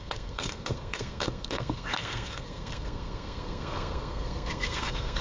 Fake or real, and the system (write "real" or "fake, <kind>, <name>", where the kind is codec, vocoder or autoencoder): fake, codec, SNAC